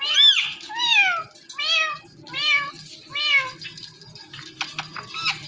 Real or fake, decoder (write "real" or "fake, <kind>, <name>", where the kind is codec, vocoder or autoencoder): real